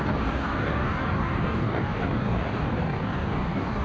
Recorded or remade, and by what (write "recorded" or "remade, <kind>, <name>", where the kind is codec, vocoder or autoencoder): remade, codec, DAC